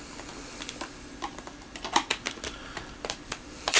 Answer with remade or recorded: remade